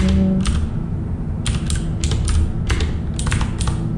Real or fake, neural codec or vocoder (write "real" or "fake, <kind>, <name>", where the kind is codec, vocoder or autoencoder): real